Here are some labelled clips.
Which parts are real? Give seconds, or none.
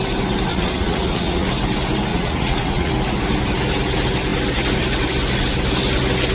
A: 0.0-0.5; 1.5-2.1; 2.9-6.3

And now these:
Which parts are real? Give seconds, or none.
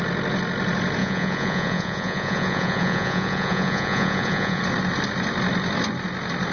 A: 0.0-1.0; 4.6-6.5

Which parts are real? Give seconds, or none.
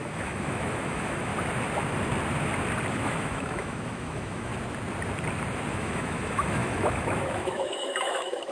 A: 1.3-2.9; 4.5-5.7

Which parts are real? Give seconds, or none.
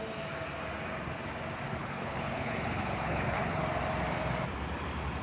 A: 0.0-1.8; 3.6-5.2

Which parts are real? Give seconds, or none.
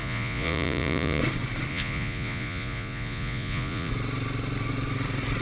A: 1.2-1.7; 3.9-5.4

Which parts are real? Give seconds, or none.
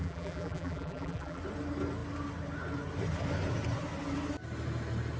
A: 1.4-5.2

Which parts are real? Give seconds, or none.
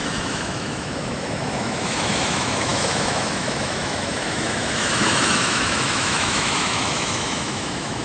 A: none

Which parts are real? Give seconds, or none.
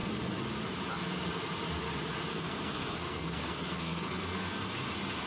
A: 0.0-2.3; 4.6-5.3